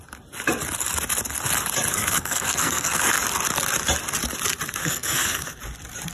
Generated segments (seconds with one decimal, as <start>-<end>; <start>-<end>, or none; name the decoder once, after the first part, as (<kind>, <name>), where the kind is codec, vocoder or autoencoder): 1.9-3.1 (codec, SNAC); 4.8-5.6